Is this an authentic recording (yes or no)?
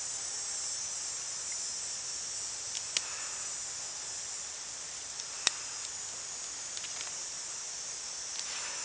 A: yes